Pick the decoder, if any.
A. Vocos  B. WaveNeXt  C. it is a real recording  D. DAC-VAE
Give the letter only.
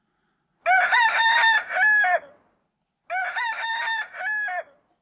C